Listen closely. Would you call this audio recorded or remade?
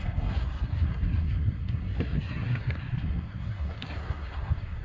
remade